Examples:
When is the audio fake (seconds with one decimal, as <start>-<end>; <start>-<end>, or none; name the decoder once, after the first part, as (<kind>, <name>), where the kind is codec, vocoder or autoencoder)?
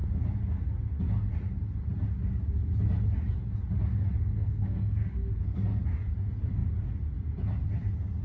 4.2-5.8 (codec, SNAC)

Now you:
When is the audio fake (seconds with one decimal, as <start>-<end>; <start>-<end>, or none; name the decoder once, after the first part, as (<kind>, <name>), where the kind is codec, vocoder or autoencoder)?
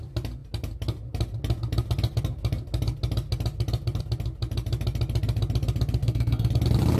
6.0-6.5 (codec, SNAC)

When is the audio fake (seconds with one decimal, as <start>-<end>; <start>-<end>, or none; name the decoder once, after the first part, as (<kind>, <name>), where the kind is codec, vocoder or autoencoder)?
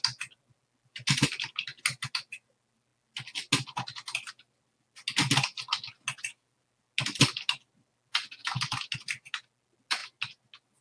none